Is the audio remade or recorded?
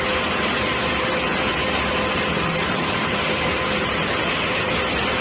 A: recorded